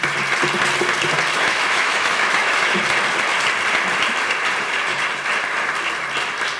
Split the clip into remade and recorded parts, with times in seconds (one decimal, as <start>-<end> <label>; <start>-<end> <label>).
0.0-1.5 recorded; 1.5-2.8 remade; 2.8-6.6 recorded